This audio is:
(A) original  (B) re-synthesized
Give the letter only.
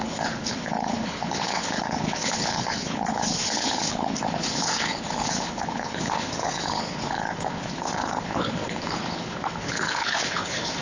B